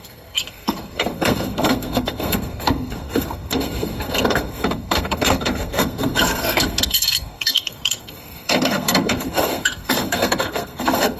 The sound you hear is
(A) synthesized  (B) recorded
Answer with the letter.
A